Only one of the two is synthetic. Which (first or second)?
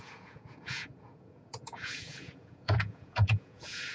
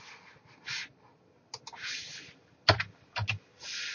first